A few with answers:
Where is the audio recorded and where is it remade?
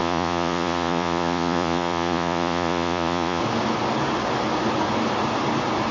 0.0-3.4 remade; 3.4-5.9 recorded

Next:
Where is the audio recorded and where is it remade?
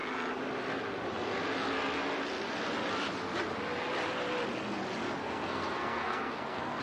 0.0-5.2 recorded; 5.2-6.8 remade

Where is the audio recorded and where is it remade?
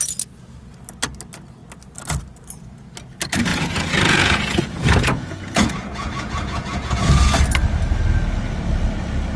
0.0-3.5 recorded; 3.5-7.3 remade; 7.3-9.4 recorded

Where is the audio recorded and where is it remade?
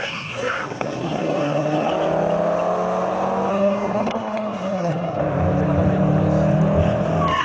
0.0-1.9 remade; 1.9-3.5 recorded; 3.5-5.2 remade; 5.2-7.4 recorded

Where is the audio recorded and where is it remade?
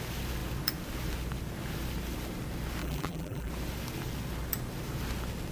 0.0-2.8 recorded; 2.8-3.5 remade; 3.5-5.5 recorded